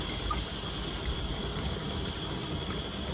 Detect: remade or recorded recorded